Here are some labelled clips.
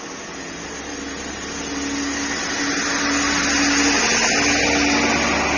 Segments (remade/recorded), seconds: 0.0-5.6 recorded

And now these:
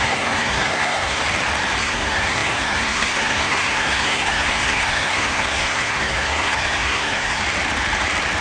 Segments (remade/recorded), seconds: 0.0-1.2 remade; 1.2-1.8 recorded; 1.8-7.4 remade; 7.4-8.4 recorded

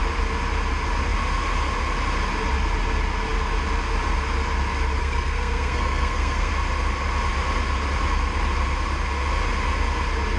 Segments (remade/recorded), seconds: 0.0-5.0 recorded; 5.0-6.5 remade; 6.5-10.4 recorded

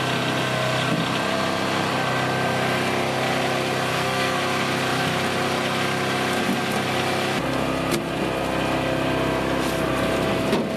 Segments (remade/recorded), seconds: 0.0-3.9 recorded; 3.9-4.4 remade; 4.4-10.8 recorded

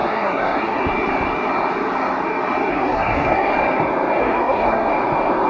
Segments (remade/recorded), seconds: 0.0-0.8 remade; 0.8-2.7 recorded; 2.7-3.5 remade; 3.5-4.2 recorded; 4.2-4.9 remade; 4.9-5.5 recorded

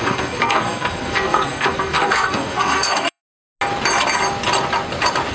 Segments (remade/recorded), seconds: 0.0-3.2 remade; 3.2-5.3 recorded